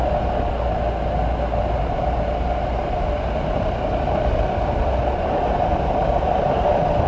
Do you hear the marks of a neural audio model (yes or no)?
no